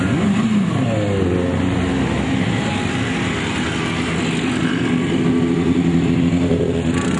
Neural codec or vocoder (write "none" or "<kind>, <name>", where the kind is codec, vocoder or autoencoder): none